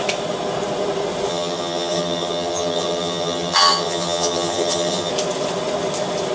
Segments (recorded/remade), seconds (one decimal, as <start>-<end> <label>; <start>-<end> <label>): 0.0-1.3 recorded; 1.3-5.1 remade; 5.1-6.3 recorded